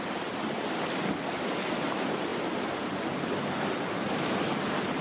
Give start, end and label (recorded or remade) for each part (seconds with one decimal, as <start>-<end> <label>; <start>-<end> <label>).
0.0-5.0 recorded

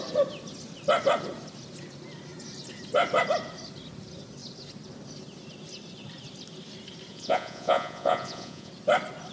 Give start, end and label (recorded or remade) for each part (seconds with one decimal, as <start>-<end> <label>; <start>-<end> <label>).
0.0-7.1 recorded; 7.1-8.7 remade; 8.7-9.3 recorded